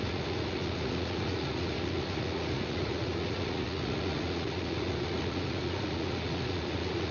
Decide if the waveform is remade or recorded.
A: remade